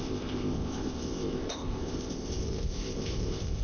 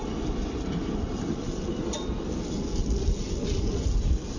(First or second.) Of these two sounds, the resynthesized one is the first